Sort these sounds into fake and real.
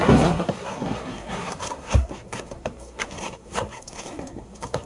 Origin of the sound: fake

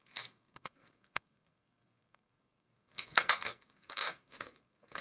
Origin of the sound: fake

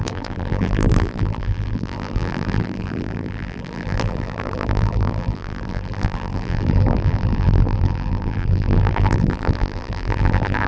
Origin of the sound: fake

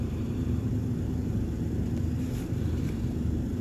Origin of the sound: fake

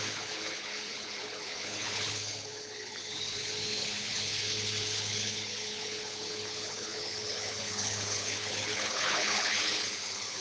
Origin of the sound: fake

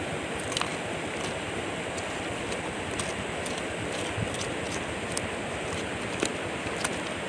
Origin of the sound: real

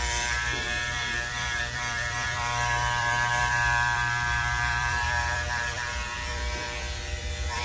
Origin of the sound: fake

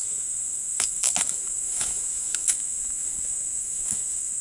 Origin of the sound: fake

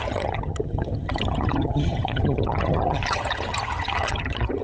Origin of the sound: fake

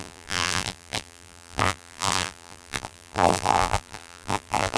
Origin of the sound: fake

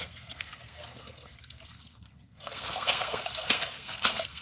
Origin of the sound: fake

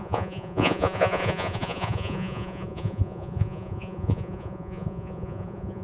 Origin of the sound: fake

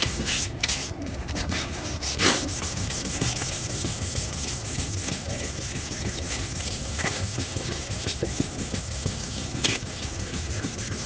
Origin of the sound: fake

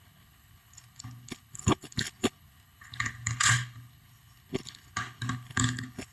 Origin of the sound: fake